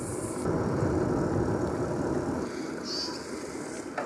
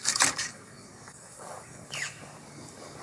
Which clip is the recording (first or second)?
first